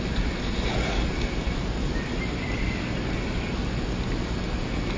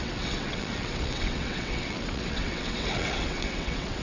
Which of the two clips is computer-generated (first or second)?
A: second